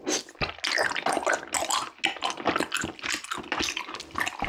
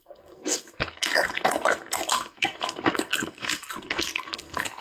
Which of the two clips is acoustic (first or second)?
first